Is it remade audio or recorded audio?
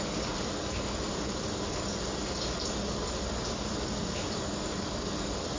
recorded